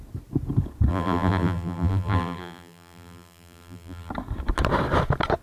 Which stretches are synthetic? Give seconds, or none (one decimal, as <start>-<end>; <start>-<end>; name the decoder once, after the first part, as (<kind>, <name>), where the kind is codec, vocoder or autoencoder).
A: 0.9-4.1 (vocoder, BigVGAN v2)